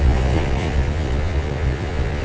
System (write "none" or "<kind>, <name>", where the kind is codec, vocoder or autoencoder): vocoder, Vocos